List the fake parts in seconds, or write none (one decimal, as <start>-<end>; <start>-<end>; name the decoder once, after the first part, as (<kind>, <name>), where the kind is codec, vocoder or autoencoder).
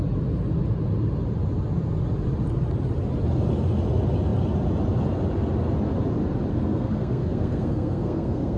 6.5-8.6 (codec, SNAC)